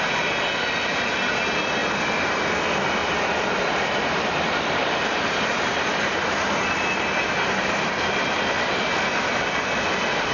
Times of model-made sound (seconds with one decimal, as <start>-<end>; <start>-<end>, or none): 3.0-5.9